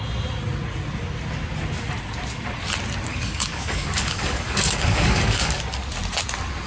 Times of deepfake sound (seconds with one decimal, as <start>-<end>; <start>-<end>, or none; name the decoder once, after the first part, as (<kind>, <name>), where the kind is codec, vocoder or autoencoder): 3.1-5.6 (codec, DAC)